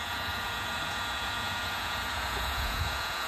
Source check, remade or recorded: remade